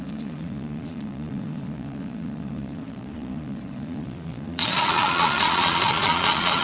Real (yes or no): no